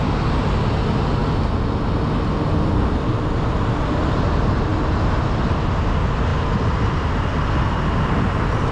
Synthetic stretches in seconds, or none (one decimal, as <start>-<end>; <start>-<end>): none